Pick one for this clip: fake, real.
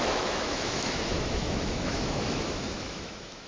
fake